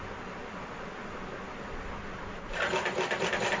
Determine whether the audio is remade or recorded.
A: recorded